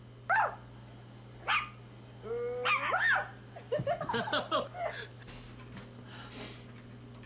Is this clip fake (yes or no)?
no